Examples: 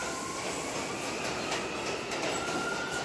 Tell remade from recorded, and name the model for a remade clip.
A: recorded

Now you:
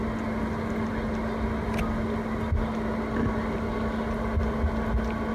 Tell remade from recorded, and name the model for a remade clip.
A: recorded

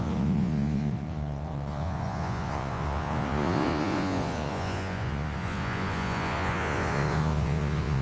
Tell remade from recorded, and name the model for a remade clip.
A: remade, vocoder, Vocos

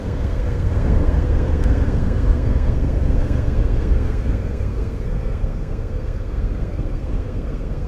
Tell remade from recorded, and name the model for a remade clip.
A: remade, codec, SNAC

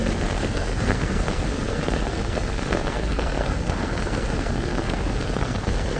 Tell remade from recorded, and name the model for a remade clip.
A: remade, codec, SNAC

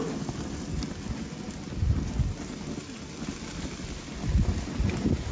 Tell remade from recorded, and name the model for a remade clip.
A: recorded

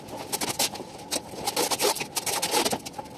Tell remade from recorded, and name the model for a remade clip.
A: recorded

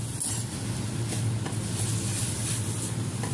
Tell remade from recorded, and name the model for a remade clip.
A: recorded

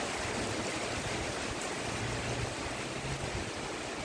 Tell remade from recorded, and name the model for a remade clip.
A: recorded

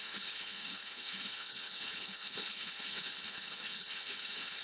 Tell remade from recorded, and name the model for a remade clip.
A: remade, codec, HILCodec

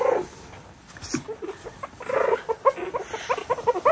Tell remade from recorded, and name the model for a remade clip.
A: recorded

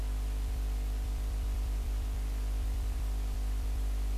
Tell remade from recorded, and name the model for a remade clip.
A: remade, vocoder, BigVGAN v2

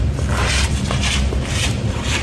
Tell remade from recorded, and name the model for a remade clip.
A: remade, vocoder, BigVGAN v2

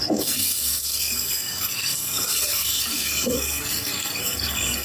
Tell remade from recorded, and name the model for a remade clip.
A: remade, codec, SNAC